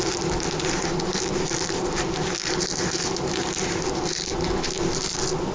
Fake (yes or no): no